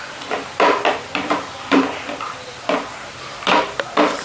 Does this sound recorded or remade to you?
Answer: recorded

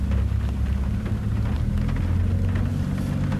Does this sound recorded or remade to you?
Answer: recorded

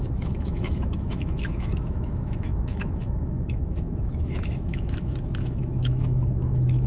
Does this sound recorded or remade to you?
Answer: remade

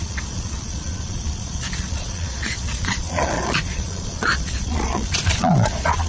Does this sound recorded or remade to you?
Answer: remade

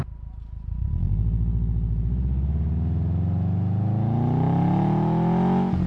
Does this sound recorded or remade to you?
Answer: recorded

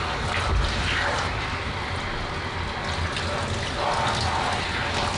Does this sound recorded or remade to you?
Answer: recorded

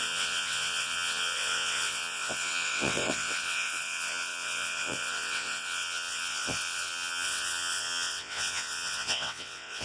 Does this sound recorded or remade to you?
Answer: remade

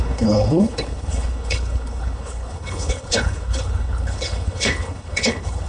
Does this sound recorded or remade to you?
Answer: remade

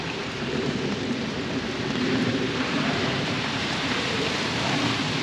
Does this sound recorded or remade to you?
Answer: remade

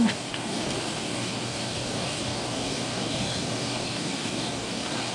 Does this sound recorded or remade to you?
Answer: remade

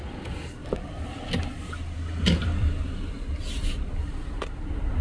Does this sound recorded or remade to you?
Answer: recorded